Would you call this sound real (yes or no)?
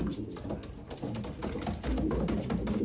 yes